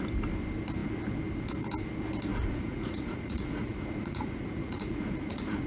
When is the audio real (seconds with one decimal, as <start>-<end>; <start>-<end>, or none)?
0.0-2.3